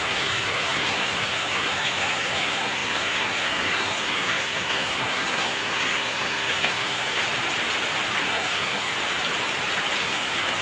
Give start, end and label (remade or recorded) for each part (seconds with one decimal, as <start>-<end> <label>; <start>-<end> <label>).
0.0-7.2 remade; 7.2-8.2 recorded; 8.2-8.9 remade; 8.9-10.0 recorded; 10.0-10.6 remade